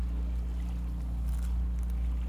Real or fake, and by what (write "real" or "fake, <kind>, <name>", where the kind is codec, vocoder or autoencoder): real